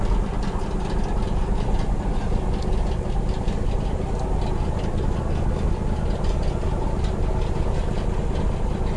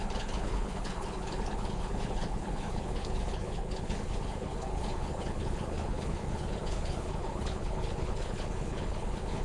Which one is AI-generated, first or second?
second